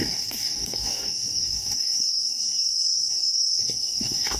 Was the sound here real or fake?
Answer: fake